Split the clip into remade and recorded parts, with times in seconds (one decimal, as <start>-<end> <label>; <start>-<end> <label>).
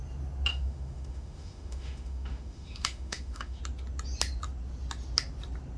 0.0-0.5 recorded; 0.5-3.6 remade; 3.6-5.8 recorded